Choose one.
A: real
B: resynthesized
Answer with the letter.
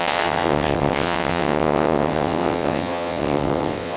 B